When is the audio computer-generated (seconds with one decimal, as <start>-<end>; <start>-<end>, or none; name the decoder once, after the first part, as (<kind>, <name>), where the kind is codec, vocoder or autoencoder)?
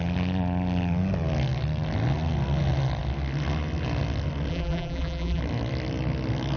4.5-5.4 (vocoder, BigVGAN v2)